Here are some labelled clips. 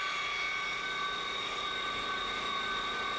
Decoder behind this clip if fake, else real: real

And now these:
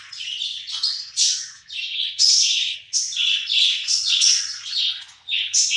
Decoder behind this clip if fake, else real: fake, vocoder, Vocos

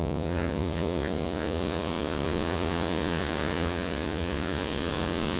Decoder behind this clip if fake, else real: fake, vocoder, Vocos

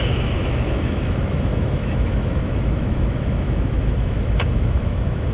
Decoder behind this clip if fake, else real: fake, autoencoder, DAC-VAE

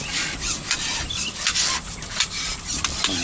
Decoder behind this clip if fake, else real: real